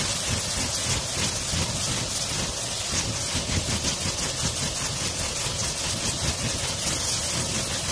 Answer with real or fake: real